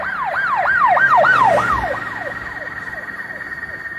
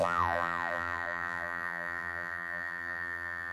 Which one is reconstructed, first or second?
second